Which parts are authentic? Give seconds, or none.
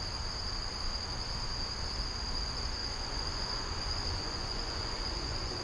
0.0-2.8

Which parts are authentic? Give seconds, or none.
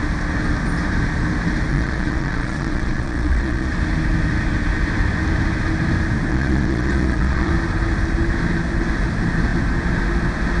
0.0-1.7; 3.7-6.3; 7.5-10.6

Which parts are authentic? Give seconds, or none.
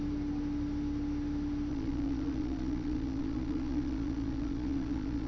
0.0-1.7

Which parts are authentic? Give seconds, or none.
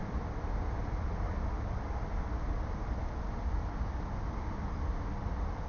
0.0-5.7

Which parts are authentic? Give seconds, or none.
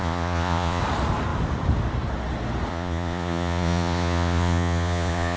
0.8-2.7